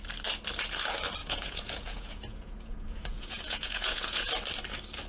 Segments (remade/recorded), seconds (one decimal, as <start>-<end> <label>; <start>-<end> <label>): 0.0-1.2 recorded; 1.2-4.3 remade; 4.3-5.1 recorded